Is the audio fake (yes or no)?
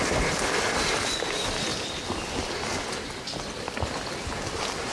no